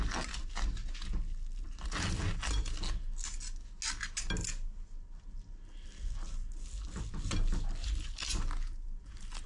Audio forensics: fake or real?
real